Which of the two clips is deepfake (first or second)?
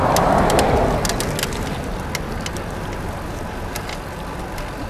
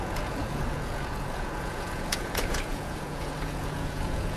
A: second